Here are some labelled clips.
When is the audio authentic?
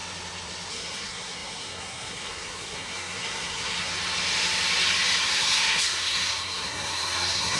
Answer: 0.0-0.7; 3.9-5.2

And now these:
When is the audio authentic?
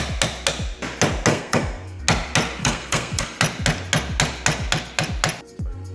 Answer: 0.0-1.3; 2.0-2.6; 3.2-5.9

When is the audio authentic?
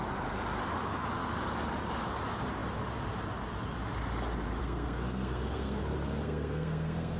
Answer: 0.0-4.6; 5.8-6.2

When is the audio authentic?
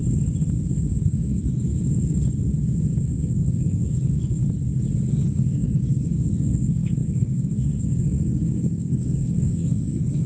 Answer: 0.0-0.7; 1.7-3.0; 4.4-5.1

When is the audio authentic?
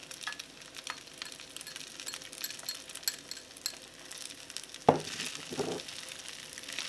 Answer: 0.0-6.9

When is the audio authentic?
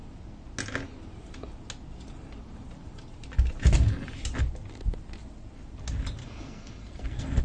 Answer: 0.0-6.2